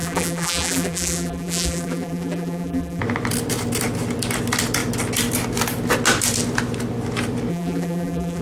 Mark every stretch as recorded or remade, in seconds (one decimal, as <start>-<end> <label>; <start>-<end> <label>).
0.0-3.0 remade; 3.0-7.5 recorded; 7.5-8.4 remade